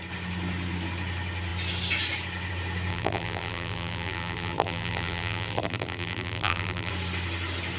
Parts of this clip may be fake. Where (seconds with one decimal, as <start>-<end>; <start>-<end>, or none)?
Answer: 2.9-6.9